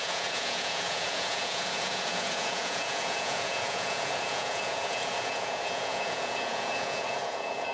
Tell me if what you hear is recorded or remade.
remade